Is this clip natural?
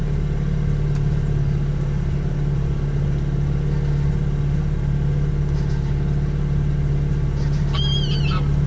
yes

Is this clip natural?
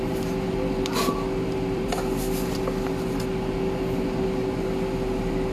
no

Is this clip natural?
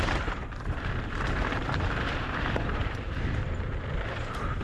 no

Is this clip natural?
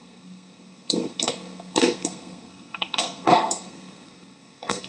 no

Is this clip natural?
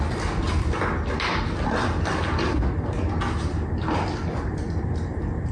yes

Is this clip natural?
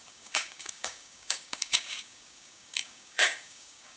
no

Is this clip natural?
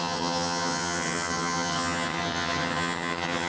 no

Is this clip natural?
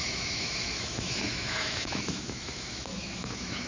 no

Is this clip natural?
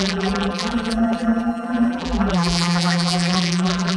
no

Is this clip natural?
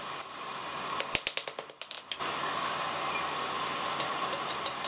no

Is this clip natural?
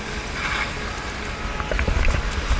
yes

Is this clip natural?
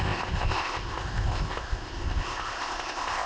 no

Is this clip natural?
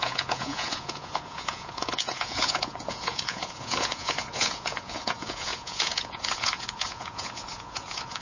no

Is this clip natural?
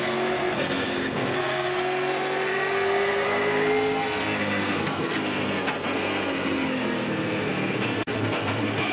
no